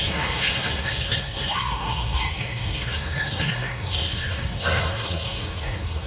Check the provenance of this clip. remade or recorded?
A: remade